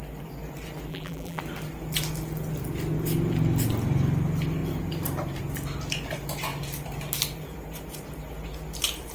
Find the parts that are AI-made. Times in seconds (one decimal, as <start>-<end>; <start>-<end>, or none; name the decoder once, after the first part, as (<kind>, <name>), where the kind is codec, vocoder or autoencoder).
0.9-1.4 (vocoder, BigVGAN v2)